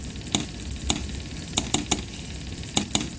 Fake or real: real